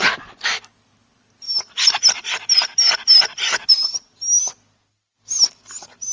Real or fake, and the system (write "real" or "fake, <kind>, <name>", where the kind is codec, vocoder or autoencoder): real